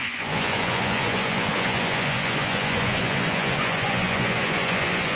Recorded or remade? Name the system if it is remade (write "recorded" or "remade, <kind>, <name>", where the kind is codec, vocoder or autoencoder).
remade, vocoder, Vocos